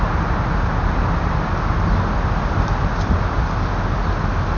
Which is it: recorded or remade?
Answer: recorded